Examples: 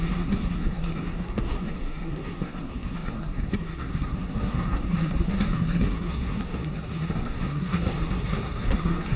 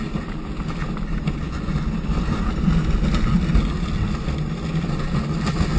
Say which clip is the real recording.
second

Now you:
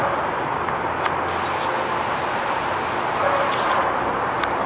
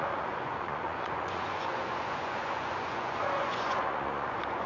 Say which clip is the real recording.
first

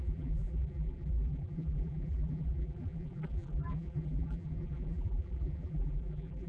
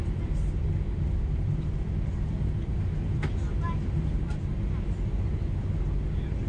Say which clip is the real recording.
second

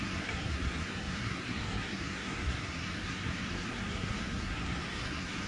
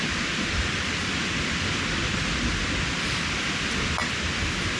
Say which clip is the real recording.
second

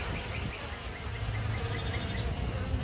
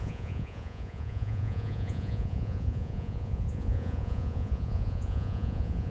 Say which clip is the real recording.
first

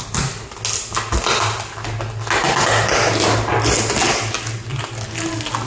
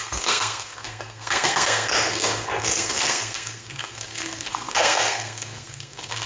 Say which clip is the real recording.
first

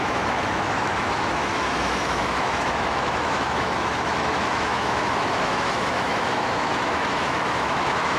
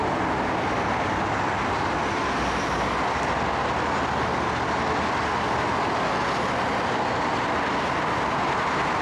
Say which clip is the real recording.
second